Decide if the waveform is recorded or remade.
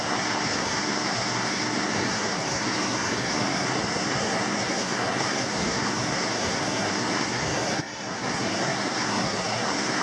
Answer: remade